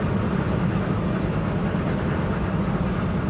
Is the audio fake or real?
real